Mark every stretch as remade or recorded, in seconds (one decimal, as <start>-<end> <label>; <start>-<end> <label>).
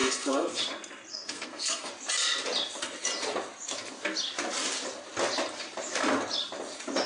0.0-0.6 remade; 0.6-1.1 recorded; 1.1-1.9 remade; 1.9-7.1 recorded